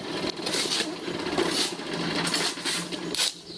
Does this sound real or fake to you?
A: real